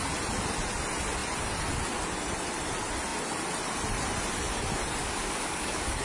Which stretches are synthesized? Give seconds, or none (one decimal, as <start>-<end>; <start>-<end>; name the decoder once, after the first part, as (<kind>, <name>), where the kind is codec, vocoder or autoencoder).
5.0-6.0 (codec, DAC)